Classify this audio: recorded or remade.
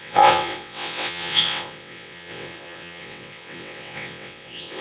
remade